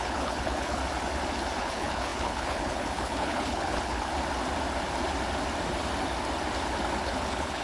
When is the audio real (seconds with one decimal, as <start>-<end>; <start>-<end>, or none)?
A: 0.8-1.6; 4.1-7.0